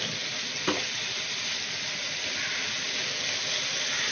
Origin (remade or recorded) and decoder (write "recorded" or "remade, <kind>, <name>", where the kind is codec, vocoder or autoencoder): recorded